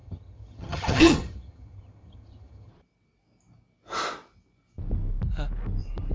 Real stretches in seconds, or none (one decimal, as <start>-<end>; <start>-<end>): 2.7-6.1